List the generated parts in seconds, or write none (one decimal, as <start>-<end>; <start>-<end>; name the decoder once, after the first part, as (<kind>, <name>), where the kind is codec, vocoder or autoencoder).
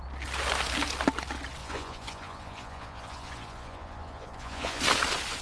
1.6-4.8 (vocoder, Vocos)